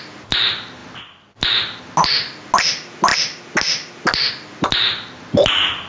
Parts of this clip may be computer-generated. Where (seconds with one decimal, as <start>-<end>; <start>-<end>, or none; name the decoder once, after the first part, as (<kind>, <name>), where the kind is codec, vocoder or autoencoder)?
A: none